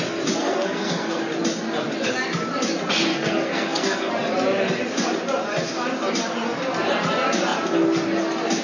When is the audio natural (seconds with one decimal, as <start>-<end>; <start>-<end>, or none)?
0.0-0.4; 1.2-3.1; 4.1-8.6